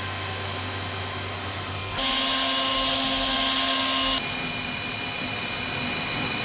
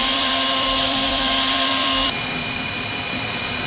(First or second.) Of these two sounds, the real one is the first